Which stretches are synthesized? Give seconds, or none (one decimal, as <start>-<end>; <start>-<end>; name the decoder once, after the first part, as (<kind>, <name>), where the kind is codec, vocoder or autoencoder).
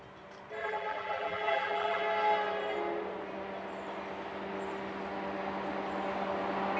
0.6-2.0 (vocoder, BigVGAN v2)